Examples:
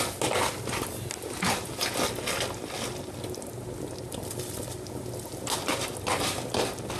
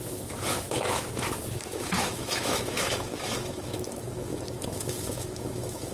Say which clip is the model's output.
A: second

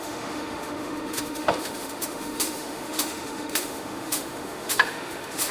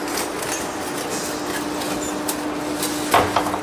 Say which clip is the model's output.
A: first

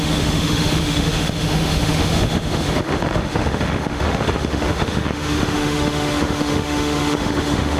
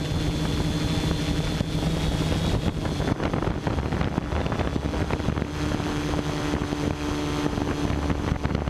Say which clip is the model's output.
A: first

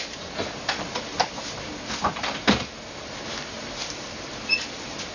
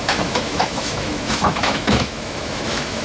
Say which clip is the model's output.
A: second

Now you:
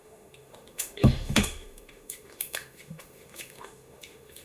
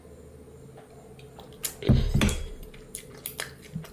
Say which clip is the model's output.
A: first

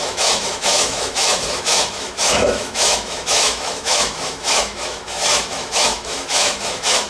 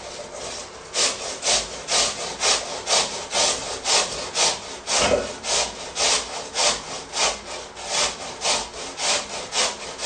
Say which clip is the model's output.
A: first